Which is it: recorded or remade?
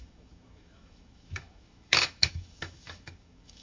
remade